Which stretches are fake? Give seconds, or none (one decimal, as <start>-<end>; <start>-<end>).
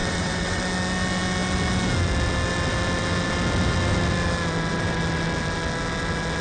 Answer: 0.0-0.6